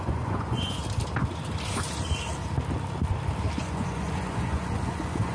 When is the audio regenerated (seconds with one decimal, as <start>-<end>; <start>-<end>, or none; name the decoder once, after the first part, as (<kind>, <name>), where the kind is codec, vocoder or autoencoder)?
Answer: 0.0-0.8 (vocoder, Vocos); 3.6-5.3